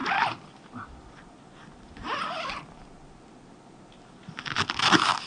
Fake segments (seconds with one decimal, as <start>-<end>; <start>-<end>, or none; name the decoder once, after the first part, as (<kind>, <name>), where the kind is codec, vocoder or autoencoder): none